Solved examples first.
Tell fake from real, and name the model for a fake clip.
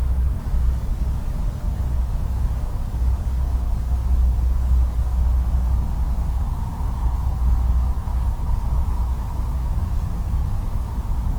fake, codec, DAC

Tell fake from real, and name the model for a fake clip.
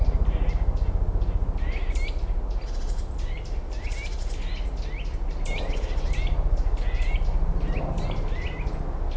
real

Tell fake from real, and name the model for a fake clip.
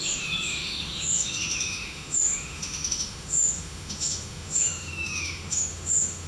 fake, autoencoder, DAC-VAE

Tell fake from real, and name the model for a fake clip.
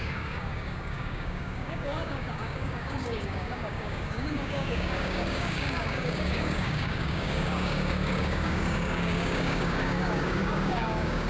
fake, codec, DAC